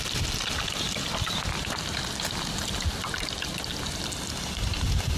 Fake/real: real